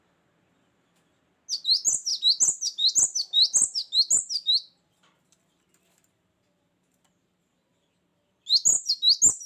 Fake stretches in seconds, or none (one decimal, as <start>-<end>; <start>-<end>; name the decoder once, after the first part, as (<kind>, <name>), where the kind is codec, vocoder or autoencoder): none